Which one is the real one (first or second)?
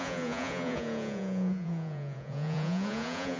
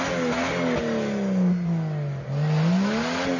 second